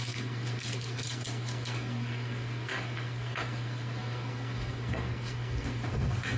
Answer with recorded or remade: remade